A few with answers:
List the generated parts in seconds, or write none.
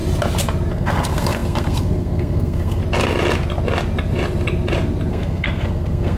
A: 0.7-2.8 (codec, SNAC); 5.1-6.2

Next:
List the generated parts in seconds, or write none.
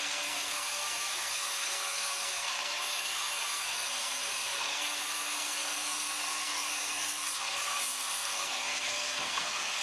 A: 0.0-9.8 (codec, SNAC)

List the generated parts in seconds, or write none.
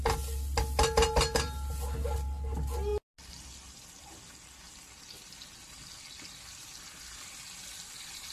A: none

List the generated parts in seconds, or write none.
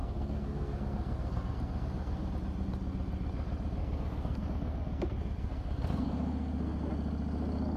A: 0.0-2.3 (codec, SNAC); 3.8-6.9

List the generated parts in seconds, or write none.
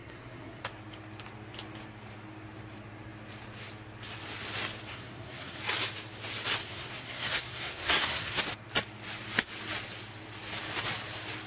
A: 0.0-0.6 (codec, SNAC); 4.9-5.6; 6.6-8.4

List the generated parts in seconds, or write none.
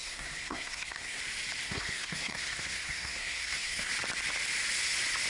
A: 0.0-1.2 (codec, SNAC); 1.6-3.9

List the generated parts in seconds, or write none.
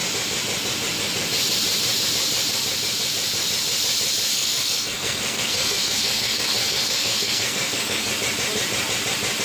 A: 4.3-8.1 (codec, SNAC)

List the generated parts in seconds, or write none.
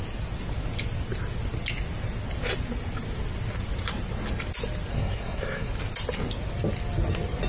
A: 4.9-5.7 (codec, SNAC)